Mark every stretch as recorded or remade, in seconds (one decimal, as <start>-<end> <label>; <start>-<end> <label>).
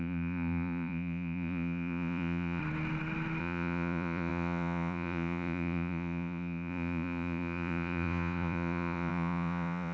0.0-2.6 remade; 2.6-3.4 recorded; 3.4-9.9 remade